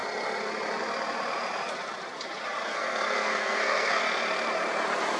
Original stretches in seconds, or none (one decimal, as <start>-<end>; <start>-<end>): 0.0-2.7; 4.0-5.2